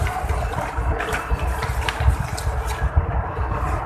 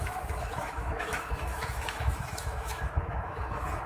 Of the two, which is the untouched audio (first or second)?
first